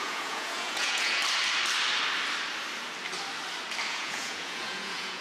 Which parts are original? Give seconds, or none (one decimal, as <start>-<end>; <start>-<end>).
1.2-3.9